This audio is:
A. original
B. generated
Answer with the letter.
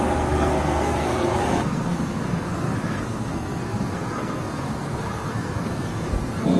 B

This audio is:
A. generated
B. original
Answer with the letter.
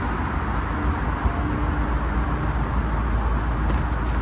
B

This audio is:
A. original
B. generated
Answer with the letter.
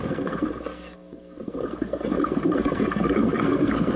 B